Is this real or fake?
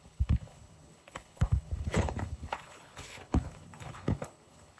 fake